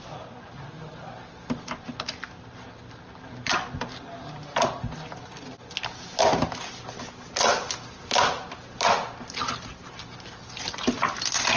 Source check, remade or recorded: recorded